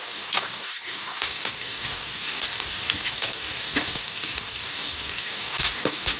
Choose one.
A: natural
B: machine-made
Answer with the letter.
B